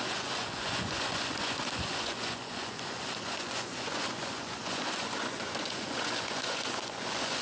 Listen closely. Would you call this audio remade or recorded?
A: remade